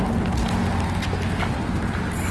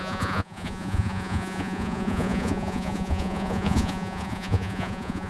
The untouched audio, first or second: first